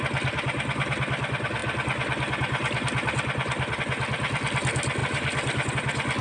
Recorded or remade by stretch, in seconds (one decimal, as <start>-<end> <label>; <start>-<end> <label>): 0.0-6.2 recorded